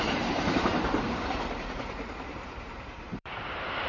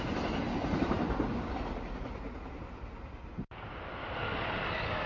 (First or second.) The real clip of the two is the second